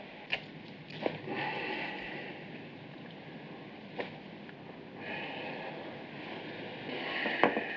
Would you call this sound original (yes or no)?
yes